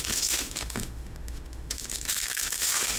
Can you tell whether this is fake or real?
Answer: fake